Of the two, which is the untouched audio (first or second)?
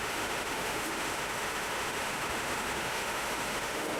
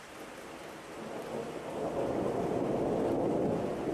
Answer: second